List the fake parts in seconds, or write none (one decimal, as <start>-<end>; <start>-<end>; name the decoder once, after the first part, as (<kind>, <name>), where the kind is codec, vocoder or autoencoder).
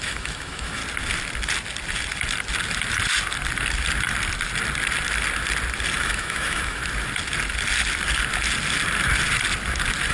0.0-0.8 (autoencoder, DAC-VAE); 6.0-6.8